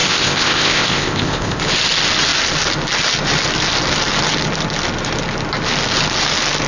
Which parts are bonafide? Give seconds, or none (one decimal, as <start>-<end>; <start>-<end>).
1.6-6.7